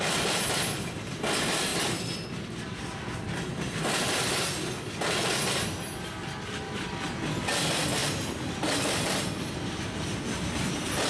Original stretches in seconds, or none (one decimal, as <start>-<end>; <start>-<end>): 0.0-11.1

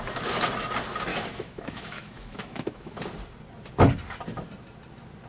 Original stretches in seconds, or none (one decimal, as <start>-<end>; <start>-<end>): 0.0-1.1; 3.0-5.3

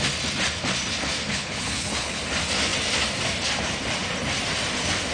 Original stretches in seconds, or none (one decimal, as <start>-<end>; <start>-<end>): 0.0-1.3; 2.2-5.1

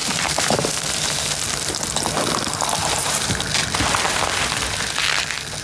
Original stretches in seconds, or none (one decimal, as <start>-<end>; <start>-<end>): 1.7-2.8; 3.4-5.6

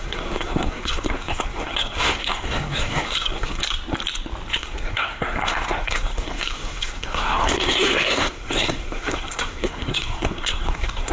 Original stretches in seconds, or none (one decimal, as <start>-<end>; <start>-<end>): 3.6-4.5

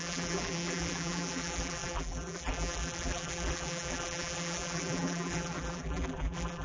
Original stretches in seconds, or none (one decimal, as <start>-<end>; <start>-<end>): none

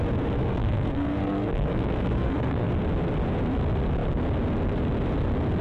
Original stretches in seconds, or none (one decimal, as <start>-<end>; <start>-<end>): 0.0-0.4; 2.7-5.6

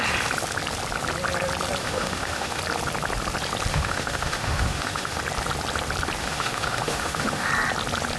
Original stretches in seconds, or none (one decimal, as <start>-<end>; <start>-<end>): 0.0-1.8; 2.6-3.7; 5.2-6.2; 7.5-8.2